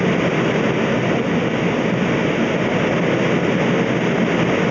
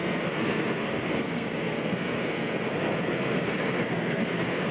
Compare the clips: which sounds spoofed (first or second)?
second